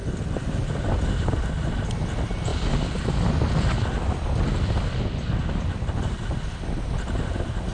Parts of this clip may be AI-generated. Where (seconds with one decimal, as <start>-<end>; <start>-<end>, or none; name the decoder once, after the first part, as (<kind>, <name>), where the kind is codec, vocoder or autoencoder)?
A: none